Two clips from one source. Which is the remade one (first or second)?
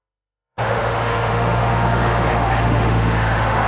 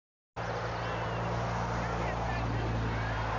first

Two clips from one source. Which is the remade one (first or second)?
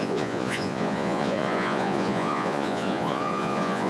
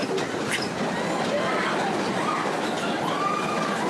first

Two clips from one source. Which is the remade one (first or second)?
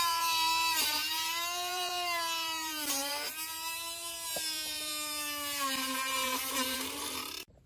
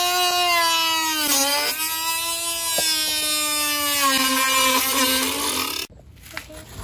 first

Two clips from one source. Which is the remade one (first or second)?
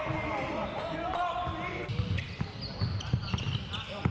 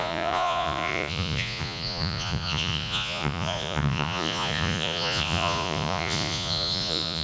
second